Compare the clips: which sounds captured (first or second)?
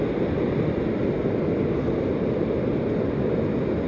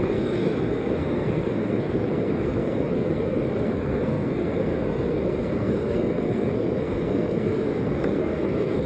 first